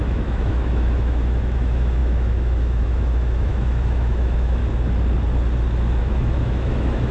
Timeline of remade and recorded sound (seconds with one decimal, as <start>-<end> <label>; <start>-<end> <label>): 0.0-4.6 remade; 4.6-6.0 recorded; 6.0-7.1 remade

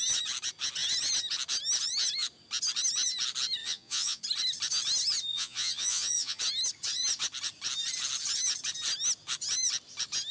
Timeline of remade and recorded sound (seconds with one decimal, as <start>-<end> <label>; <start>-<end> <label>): 0.0-3.6 recorded; 3.6-4.2 remade; 4.2-5.3 recorded; 5.3-6.4 remade; 6.4-10.3 recorded

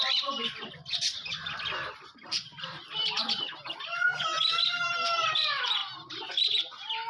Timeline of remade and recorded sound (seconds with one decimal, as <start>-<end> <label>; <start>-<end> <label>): 0.0-4.1 remade; 4.1-4.7 recorded; 4.7-7.1 remade

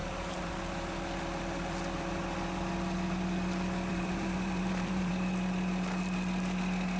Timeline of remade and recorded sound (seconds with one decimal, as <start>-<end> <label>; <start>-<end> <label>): 0.0-0.6 remade; 0.6-3.9 recorded; 3.9-5.1 remade; 5.1-7.0 recorded

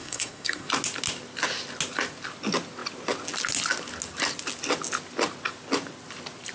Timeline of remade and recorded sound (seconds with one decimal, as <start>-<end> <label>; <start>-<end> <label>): 0.0-0.7 remade; 0.7-6.5 recorded

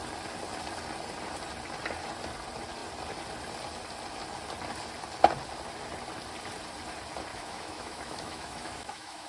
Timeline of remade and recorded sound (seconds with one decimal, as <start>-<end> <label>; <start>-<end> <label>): 0.0-7.3 recorded; 7.3-9.3 remade